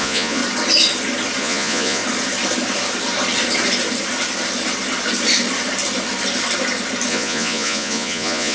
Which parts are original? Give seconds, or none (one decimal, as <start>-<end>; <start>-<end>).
0.4-1.4; 2.0-7.1